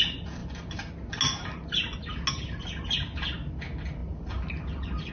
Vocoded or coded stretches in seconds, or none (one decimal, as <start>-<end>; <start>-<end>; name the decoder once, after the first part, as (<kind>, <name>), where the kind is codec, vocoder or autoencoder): none